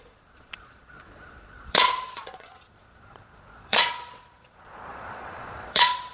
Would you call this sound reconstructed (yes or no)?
yes